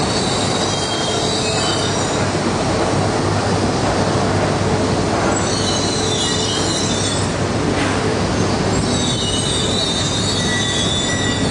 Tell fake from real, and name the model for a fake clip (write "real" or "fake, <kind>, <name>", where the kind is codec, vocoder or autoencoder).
real